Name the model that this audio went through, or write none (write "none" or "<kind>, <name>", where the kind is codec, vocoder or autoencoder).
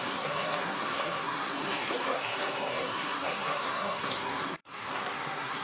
codec, SNAC